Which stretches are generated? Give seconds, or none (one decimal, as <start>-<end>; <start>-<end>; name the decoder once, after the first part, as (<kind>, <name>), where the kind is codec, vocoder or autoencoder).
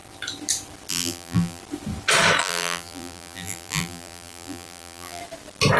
0.9-1.6 (vocoder, BigVGAN v2); 2.4-5.2